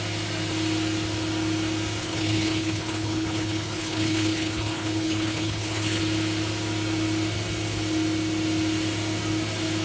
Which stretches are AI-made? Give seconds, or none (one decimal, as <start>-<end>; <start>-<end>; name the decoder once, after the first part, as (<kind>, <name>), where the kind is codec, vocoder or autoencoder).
2.0-6.0 (codec, HILCodec)